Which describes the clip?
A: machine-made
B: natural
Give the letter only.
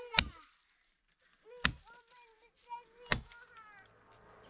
B